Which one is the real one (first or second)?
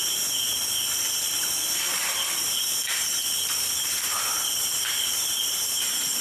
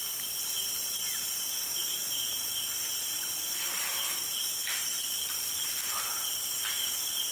first